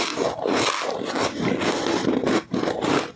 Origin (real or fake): real